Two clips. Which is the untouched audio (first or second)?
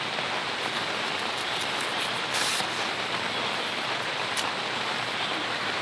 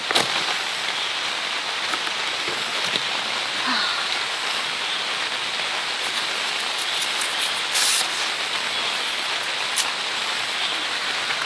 second